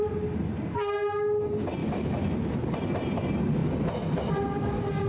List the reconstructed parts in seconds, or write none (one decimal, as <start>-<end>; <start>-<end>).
1.8-2.6